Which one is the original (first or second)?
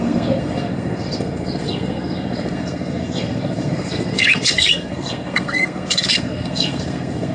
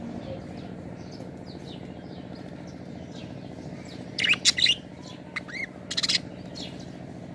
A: second